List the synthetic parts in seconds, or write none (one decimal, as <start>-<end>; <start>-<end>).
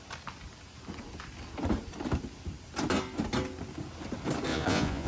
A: 4.5-5.1